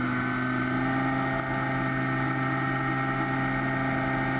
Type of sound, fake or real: real